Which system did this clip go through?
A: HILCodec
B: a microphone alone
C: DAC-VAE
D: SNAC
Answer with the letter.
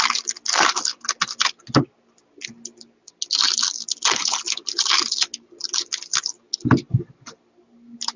B